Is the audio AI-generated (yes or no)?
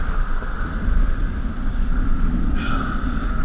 no